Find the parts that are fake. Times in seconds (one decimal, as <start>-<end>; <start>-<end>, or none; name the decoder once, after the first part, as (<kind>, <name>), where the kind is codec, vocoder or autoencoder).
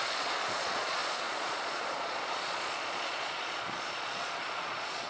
0.0-5.1 (vocoder, Vocos)